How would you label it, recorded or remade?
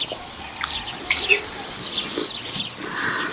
recorded